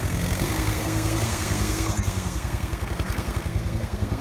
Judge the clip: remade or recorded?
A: remade